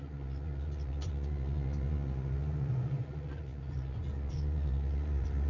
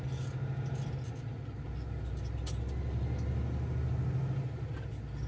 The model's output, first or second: first